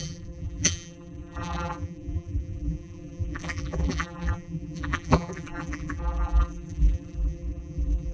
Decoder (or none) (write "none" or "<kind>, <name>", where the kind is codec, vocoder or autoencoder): vocoder, BigVGAN v2